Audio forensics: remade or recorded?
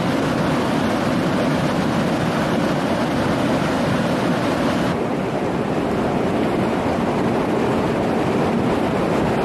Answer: recorded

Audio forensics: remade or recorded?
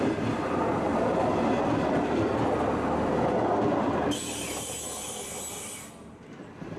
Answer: recorded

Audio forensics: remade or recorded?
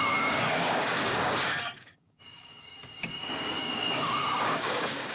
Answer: remade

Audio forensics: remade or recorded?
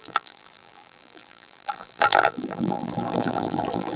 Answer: remade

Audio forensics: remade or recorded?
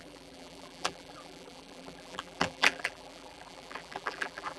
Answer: remade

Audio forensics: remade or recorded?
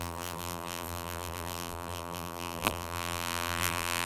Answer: remade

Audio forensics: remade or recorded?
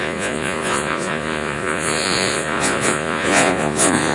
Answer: remade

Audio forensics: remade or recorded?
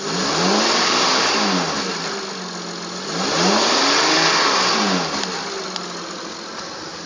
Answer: recorded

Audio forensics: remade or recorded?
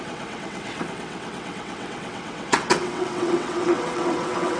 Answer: remade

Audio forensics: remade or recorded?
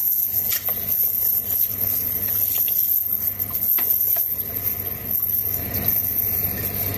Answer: recorded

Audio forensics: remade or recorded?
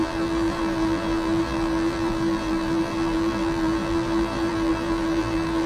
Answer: remade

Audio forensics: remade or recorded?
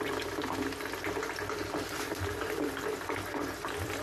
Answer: remade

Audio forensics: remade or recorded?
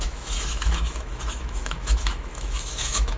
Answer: remade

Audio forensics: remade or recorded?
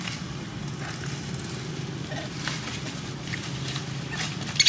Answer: recorded